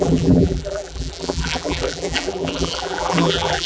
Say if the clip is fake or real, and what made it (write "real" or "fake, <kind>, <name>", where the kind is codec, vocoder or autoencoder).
fake, vocoder, BigVGAN v2